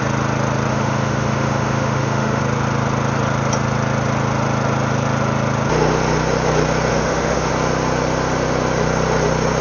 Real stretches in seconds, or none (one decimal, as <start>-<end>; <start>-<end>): 0.0-0.7; 2.4-6.9; 7.5-9.6